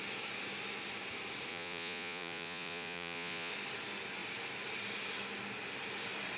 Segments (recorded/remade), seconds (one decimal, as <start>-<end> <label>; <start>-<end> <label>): 0.0-1.5 recorded; 1.5-3.5 remade; 3.5-6.4 recorded